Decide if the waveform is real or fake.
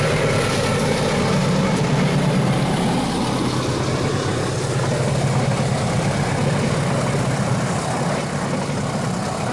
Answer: real